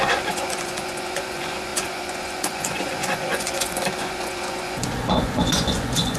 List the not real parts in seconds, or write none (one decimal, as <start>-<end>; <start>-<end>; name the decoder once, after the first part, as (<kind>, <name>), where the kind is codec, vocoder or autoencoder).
0.0-6.2 (vocoder, Vocos)